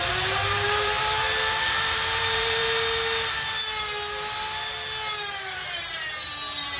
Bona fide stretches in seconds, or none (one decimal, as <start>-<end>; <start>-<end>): 2.6-5.3